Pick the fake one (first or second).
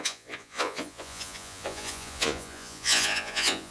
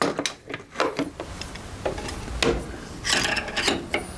first